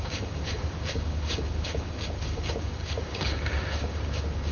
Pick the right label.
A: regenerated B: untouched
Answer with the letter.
A